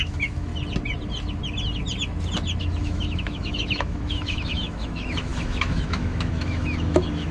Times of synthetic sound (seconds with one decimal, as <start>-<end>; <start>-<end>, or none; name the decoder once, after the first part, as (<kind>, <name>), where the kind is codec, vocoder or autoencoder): 0.0-0.5 (autoencoder, DAC-VAE); 2.6-7.3